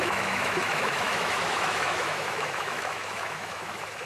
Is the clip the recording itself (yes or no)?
no